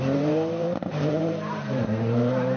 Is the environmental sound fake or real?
fake